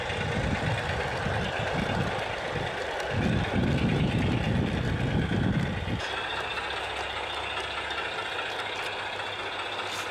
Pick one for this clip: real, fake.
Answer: real